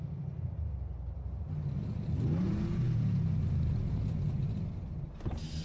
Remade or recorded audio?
recorded